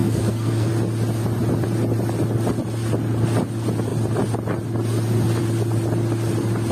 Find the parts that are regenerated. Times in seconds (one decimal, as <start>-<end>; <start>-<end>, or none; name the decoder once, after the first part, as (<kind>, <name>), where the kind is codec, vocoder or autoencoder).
0.0-0.7 (codec, SNAC)